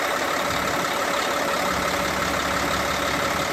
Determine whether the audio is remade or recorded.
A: recorded